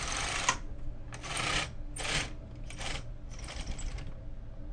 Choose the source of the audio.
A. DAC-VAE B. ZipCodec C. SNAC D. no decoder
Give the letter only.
D